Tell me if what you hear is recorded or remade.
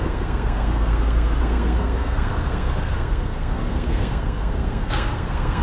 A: remade